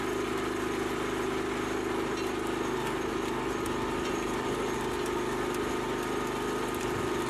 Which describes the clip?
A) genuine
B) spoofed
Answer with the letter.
A